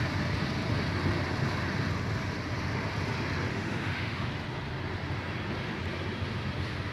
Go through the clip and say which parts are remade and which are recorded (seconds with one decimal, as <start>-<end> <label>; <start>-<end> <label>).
0.0-3.5 recorded; 3.5-4.3 remade; 4.3-6.9 recorded

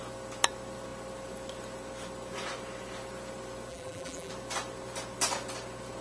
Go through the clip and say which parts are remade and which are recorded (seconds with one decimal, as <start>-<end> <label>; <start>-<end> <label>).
0.0-3.7 recorded; 3.7-4.3 remade; 4.3-6.0 recorded